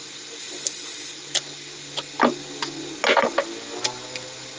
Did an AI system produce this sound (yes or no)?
no